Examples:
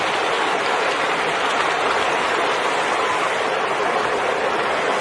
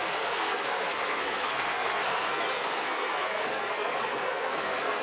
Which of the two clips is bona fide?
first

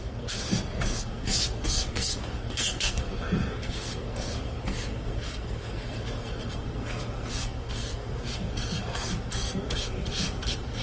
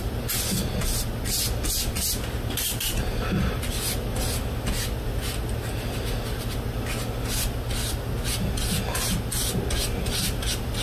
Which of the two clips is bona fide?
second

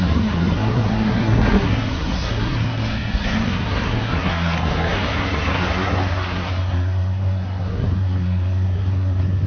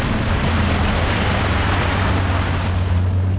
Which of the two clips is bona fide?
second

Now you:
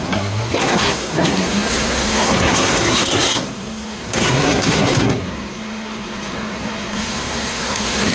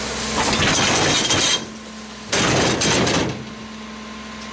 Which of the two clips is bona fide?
second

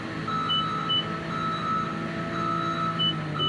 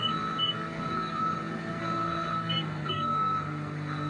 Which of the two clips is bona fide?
first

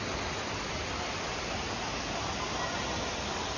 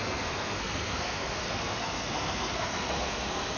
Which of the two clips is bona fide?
first